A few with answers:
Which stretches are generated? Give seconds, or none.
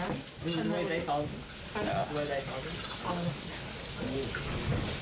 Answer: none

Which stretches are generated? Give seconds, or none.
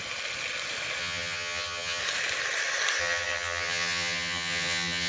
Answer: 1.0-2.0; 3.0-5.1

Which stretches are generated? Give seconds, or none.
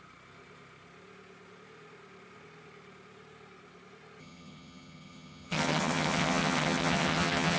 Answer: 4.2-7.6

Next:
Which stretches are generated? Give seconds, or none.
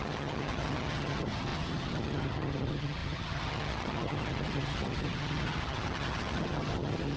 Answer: 0.0-7.2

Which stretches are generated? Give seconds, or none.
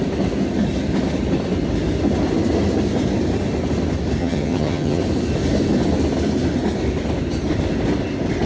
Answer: 4.2-5.0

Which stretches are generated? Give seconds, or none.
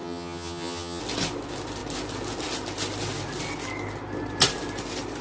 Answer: 0.0-1.0